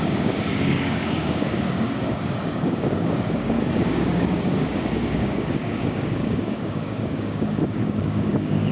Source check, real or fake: fake